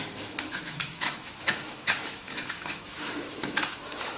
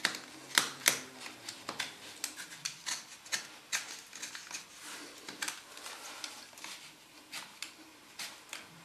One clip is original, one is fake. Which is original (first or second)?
second